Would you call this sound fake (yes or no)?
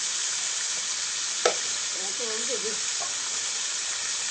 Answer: no